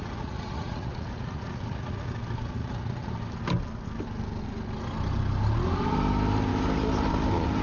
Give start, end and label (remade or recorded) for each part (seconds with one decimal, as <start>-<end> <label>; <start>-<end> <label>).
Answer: 0.0-2.1 remade; 2.1-2.6 recorded; 2.6-3.1 remade; 3.1-7.6 recorded